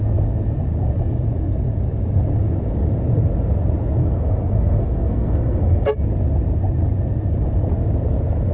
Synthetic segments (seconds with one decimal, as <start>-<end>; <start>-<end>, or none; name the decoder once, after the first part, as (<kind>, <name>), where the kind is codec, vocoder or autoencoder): 4.0-5.9 (codec, SNAC)